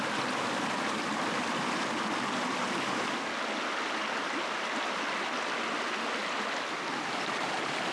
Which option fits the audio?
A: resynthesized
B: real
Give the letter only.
B